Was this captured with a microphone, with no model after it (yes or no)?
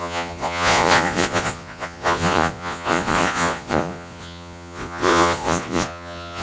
no